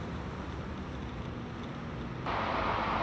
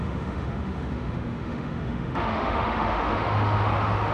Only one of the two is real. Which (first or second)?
first